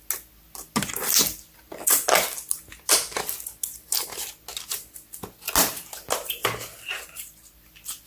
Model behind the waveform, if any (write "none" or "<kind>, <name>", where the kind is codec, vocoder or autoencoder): none